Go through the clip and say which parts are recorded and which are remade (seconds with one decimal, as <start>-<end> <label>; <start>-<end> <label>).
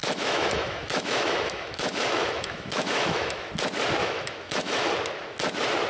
0.0-3.5 remade; 3.5-4.0 recorded; 4.0-4.9 remade; 4.9-5.9 recorded